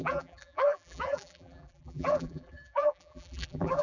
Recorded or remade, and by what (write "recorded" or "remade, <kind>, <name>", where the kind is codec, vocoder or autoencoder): remade, vocoder, BigVGAN v2